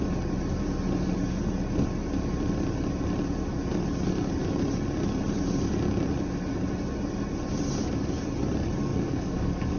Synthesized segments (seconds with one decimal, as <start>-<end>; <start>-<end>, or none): 8.9-9.8